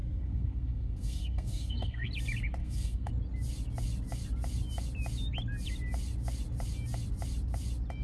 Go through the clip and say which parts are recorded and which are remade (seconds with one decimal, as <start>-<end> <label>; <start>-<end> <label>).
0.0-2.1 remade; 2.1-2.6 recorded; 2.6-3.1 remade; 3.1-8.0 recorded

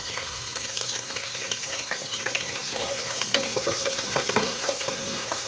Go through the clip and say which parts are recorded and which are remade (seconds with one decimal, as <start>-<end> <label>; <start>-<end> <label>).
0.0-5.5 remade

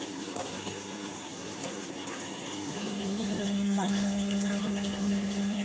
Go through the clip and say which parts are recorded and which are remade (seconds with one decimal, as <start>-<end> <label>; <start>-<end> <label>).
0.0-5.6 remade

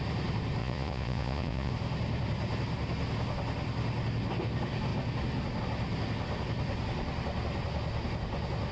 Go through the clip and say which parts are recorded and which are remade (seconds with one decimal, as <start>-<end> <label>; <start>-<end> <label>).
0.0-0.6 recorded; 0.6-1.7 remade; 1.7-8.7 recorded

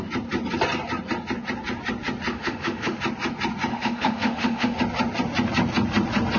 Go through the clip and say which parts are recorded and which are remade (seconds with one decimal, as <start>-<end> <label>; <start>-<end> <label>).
0.0-2.3 recorded; 2.3-3.0 remade; 3.0-3.7 recorded; 3.7-4.8 remade; 4.8-6.4 recorded